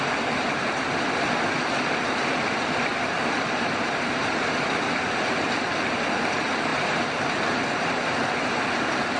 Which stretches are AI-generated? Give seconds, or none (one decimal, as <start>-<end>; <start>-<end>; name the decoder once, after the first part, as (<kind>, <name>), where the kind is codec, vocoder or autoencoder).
none